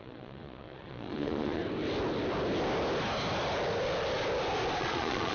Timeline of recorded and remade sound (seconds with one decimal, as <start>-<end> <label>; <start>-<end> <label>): 0.0-1.6 remade; 1.6-4.8 recorded; 4.8-5.3 remade